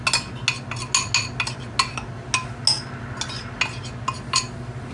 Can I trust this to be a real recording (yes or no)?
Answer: yes